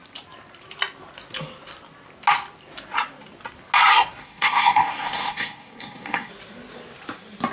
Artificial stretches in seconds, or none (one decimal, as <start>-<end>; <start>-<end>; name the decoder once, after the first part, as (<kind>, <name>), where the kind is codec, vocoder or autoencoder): 4.2-6.3 (codec, SNAC)